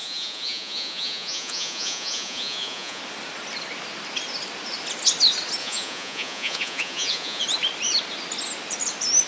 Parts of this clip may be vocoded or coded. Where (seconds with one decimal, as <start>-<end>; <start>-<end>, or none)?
0.0-3.0; 5.6-7.4